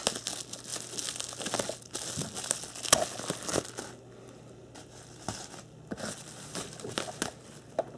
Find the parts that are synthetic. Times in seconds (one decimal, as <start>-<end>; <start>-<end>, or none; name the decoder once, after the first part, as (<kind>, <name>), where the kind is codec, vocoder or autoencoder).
none